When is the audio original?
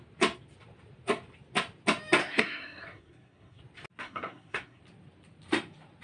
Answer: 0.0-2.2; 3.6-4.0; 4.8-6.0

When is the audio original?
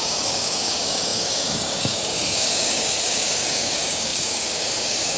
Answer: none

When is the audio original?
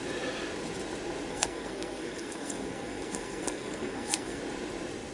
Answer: 0.0-1.3; 4.4-5.1